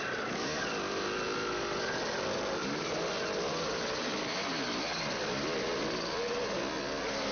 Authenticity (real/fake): real